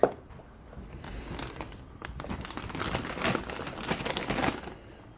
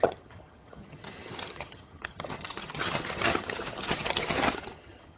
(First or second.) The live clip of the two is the first